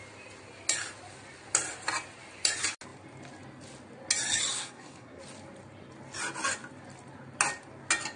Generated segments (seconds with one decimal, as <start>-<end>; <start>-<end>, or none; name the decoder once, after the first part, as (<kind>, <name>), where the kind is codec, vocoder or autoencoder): 4.5-5.2 (codec, SNAC)